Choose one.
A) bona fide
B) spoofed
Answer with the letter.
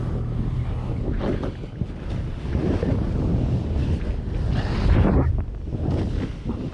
A